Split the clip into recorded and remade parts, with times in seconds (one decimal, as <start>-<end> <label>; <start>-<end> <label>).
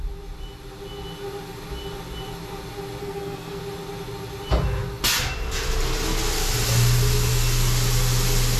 0.0-3.0 recorded; 3.0-3.6 remade; 3.6-8.6 recorded